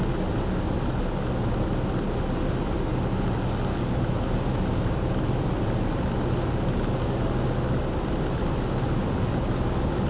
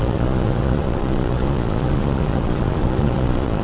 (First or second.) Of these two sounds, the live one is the first